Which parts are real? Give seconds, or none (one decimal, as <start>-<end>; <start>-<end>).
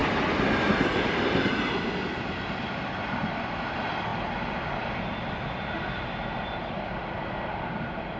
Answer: 0.0-8.2